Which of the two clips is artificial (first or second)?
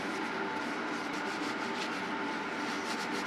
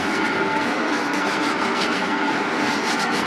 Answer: second